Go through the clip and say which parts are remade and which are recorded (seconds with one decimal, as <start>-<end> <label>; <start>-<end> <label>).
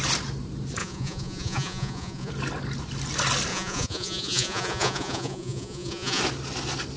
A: 0.0-0.8 recorded; 0.8-2.3 remade; 2.3-3.5 recorded; 3.5-6.2 remade; 6.2-7.0 recorded